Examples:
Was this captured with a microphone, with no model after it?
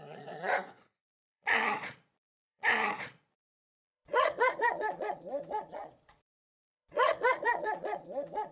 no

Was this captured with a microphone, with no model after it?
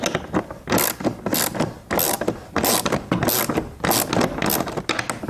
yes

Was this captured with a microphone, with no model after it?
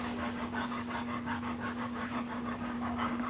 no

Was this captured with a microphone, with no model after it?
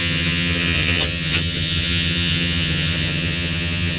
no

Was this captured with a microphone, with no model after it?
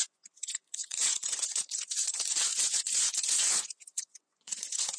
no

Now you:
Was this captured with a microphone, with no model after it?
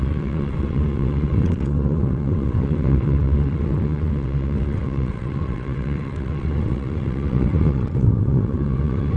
no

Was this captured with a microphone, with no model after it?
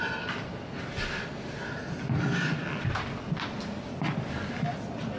yes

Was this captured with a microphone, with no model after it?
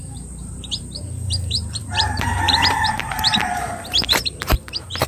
no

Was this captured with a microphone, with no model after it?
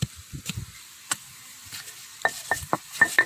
yes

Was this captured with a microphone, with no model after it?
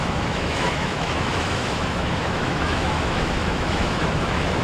no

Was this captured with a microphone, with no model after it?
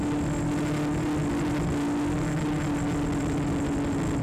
yes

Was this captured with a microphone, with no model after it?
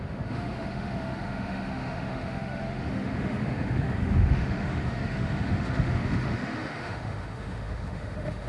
no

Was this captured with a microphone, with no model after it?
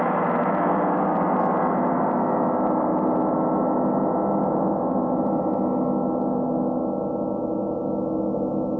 yes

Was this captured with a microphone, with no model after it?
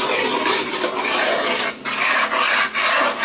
yes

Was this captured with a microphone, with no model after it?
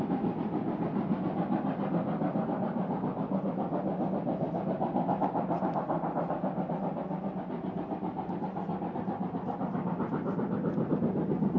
yes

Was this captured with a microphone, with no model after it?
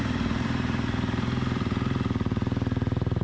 no